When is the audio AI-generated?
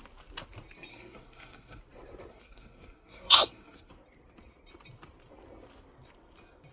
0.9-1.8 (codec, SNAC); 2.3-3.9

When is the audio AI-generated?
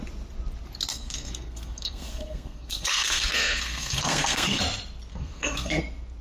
0.9-4.6 (codec, SNAC); 5.1-5.8